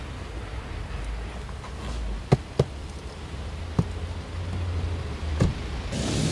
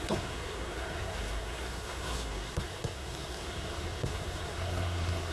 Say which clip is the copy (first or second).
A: second